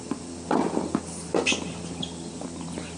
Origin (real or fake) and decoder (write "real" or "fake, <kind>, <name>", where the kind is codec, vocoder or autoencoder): real